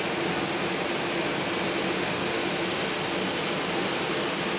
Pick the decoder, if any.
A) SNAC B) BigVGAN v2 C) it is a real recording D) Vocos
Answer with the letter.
C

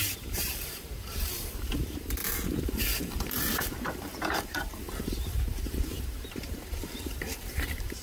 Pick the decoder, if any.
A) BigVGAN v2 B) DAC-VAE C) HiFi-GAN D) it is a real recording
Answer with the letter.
A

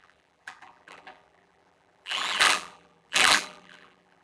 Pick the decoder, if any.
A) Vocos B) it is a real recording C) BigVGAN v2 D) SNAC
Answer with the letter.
C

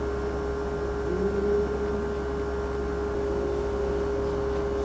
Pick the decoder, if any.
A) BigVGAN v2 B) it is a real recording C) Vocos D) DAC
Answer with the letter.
B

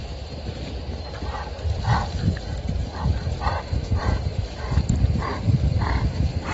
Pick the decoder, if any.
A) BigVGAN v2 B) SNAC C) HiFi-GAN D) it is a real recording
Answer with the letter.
A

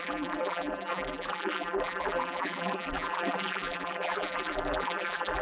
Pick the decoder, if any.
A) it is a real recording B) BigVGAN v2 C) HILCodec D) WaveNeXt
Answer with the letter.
B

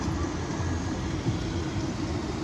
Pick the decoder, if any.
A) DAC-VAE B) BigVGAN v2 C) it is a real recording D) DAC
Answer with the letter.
C